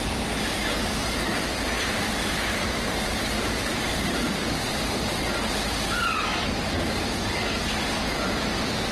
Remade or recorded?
remade